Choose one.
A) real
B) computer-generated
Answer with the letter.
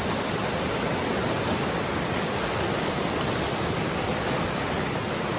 A